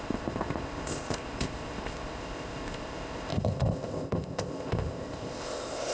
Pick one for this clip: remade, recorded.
remade